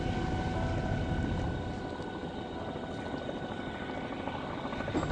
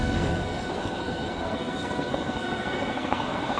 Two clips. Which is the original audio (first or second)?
first